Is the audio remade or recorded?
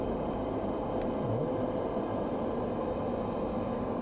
recorded